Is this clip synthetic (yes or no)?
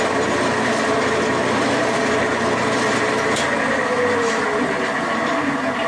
no